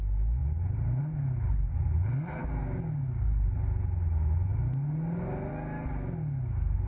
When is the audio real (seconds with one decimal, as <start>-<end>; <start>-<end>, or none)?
0.0-6.9